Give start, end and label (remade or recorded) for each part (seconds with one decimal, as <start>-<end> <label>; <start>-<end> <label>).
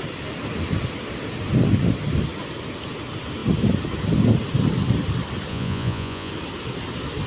0.0-5.5 recorded; 5.5-6.3 remade; 6.3-7.3 recorded